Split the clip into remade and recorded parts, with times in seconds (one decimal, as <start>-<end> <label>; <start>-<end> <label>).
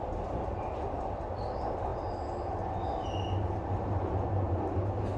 0.0-5.2 recorded